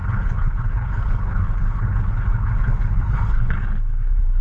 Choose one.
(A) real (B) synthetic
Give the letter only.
B